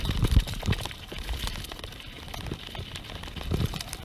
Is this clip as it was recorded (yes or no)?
yes